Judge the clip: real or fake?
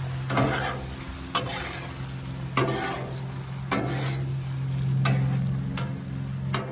real